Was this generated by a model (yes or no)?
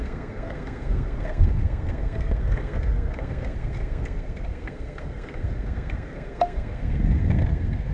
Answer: yes